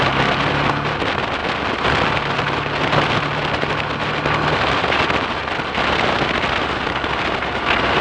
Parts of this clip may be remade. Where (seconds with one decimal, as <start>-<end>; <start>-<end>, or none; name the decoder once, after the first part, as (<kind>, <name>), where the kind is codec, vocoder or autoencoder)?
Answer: none